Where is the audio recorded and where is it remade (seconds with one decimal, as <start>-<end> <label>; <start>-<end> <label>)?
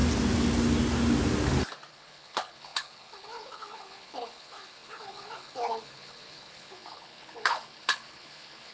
0.0-1.9 recorded; 1.9-8.7 remade